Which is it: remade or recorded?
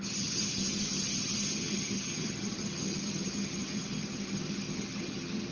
remade